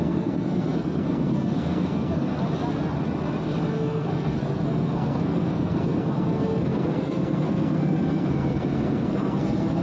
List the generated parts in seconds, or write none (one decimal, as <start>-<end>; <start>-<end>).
0.0-2.3; 3.7-9.8